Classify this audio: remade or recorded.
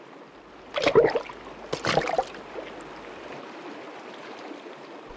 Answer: recorded